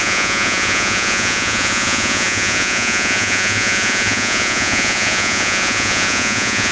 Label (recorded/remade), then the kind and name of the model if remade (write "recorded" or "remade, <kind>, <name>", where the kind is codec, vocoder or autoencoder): remade, vocoder, Vocos